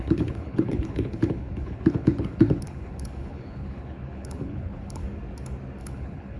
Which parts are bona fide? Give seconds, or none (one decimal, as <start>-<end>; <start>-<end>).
5.0-5.8